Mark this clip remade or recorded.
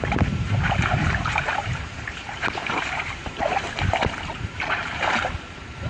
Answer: remade